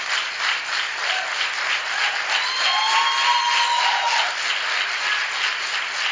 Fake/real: real